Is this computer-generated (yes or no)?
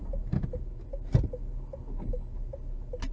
no